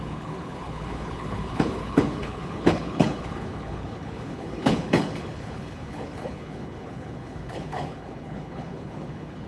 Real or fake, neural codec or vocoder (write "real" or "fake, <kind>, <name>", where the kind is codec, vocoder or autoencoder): fake, codec, HILCodec